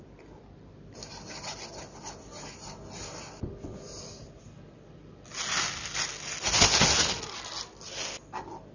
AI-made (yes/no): no